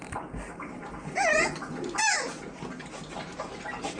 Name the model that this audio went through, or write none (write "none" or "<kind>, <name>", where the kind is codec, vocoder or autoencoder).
none